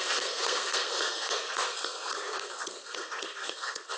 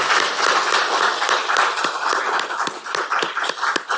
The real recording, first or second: second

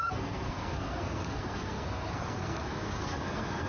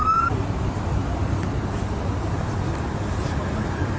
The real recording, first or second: second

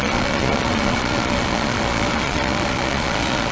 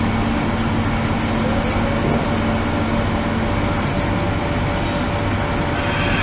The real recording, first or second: second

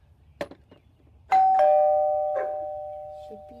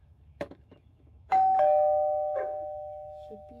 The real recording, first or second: first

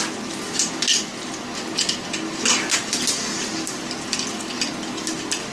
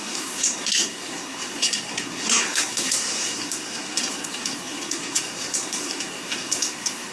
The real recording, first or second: first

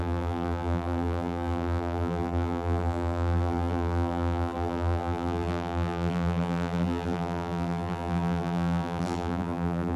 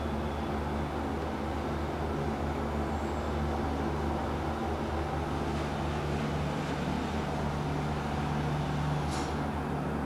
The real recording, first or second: second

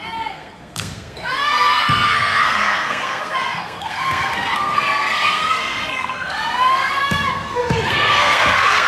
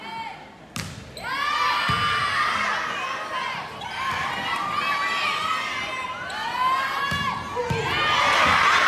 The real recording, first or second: second